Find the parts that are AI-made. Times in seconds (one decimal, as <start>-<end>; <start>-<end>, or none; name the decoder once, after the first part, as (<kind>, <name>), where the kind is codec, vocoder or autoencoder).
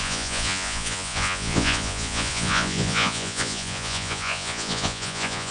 0.0-5.5 (vocoder, Vocos)